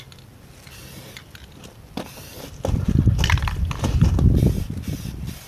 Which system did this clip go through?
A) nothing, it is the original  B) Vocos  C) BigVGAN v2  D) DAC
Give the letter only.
A